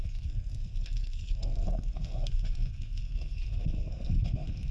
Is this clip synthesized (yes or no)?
yes